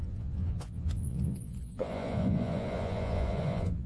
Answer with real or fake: fake